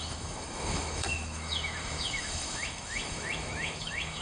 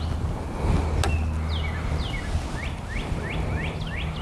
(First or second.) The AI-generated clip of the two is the first